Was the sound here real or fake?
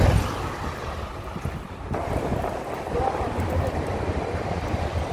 real